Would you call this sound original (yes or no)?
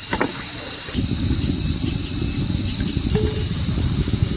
yes